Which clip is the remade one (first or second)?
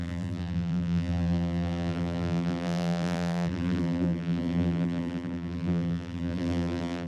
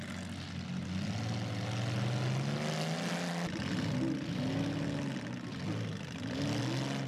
first